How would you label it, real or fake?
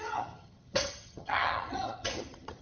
fake